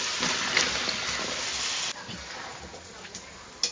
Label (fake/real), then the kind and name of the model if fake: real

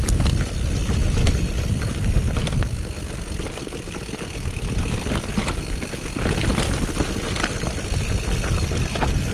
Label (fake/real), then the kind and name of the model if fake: real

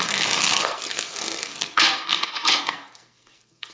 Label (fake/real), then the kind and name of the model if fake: fake, codec, SNAC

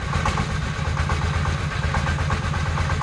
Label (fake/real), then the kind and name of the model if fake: real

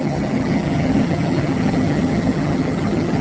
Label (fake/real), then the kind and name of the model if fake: fake, vocoder, HiFi-GAN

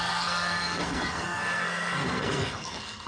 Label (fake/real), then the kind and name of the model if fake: fake, codec, SNAC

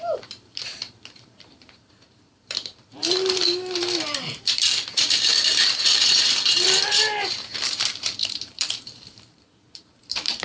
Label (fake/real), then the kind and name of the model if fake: fake, vocoder, BigVGAN v2